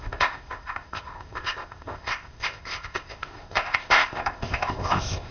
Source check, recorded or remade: remade